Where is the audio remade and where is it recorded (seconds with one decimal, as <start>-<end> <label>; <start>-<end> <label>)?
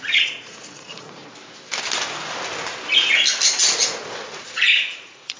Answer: 0.0-1.2 remade; 1.2-4.4 recorded; 4.4-5.4 remade